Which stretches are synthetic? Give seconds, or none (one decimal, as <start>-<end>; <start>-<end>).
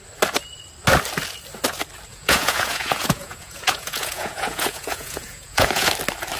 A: 2.1-5.9